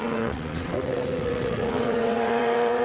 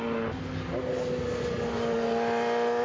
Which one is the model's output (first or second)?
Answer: first